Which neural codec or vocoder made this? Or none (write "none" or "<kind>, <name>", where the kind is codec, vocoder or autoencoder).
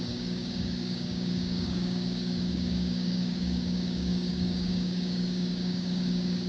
codec, DAC